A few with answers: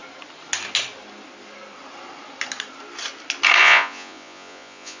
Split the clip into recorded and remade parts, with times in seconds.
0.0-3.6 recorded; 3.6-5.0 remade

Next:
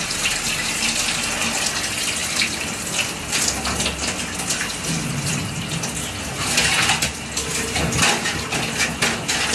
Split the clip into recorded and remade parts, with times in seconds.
0.0-2.2 recorded; 2.2-3.4 remade; 3.4-9.5 recorded

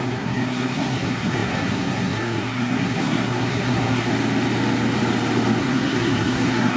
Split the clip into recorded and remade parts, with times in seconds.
0.0-4.1 remade; 4.1-5.6 recorded; 5.6-6.8 remade

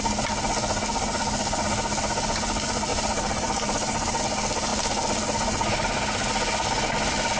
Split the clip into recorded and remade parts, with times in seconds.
0.0-2.9 recorded; 2.9-4.2 remade; 4.2-7.4 recorded

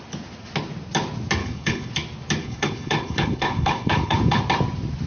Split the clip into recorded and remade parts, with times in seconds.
0.0-1.4 recorded; 1.4-1.9 remade; 1.9-2.4 recorded; 2.4-4.4 remade; 4.4-5.1 recorded

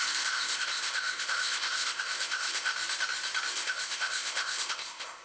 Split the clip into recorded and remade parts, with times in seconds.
0.0-2.7 remade; 2.7-3.5 recorded; 3.5-5.2 remade

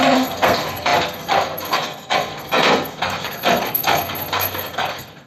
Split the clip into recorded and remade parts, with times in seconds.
0.0-5.3 remade

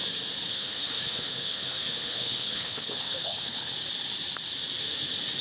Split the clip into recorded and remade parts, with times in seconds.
0.0-0.5 recorded; 0.5-3.7 remade; 3.7-5.4 recorded